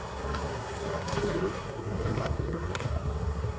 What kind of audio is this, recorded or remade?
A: remade